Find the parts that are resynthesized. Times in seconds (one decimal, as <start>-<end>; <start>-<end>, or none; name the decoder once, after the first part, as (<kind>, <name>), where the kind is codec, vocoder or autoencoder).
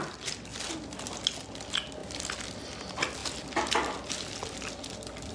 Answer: none